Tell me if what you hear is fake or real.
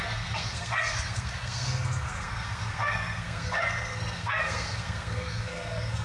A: fake